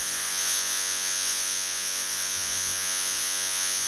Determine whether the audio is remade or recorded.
remade